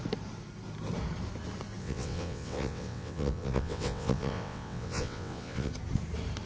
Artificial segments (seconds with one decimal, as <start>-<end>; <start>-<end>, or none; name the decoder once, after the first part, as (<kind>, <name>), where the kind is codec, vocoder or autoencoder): 1.8-5.7 (vocoder, WaveNeXt)